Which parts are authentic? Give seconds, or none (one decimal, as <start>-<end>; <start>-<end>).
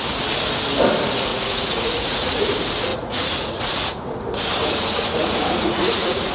0.0-1.3; 2.4-2.9; 4.0-4.6